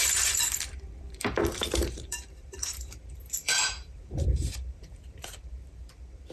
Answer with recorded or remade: remade